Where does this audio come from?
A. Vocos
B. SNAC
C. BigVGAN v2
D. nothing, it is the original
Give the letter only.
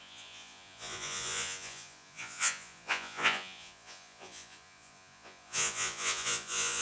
A